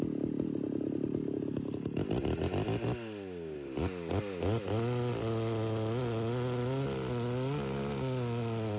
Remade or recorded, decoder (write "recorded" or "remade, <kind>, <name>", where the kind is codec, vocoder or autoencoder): recorded